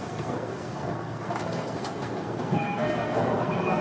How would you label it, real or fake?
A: fake